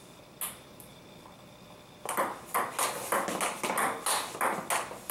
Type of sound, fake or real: real